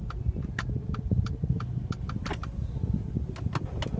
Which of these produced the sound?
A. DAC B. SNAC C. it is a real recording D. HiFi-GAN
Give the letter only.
C